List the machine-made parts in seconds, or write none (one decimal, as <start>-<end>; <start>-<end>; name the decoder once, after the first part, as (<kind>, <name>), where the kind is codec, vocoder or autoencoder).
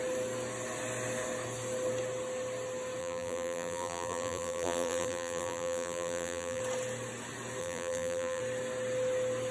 3.0-6.6 (vocoder, BigVGAN v2); 7.6-8.4